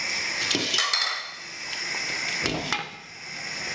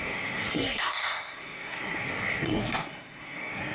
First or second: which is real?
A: first